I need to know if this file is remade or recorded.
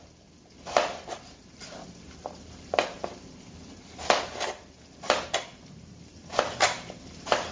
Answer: remade